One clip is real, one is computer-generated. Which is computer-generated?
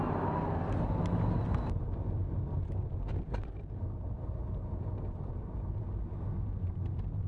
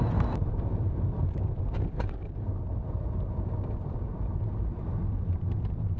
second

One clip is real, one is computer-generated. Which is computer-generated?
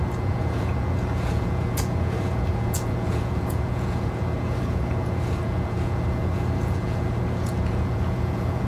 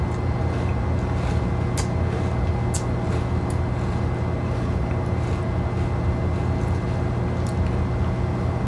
first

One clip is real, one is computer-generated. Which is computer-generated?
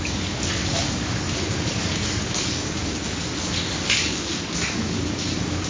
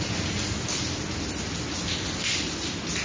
first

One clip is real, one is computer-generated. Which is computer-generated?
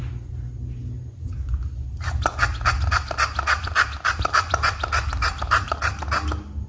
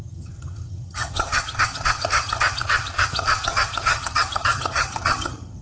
second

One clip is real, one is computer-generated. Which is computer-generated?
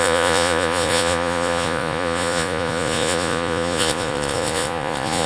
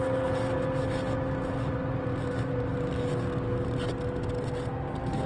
first